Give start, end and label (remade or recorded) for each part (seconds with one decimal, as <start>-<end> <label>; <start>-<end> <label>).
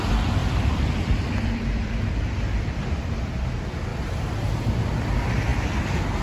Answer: 0.0-0.4 recorded; 0.4-3.4 remade; 3.4-3.9 recorded; 3.9-4.5 remade; 4.5-6.2 recorded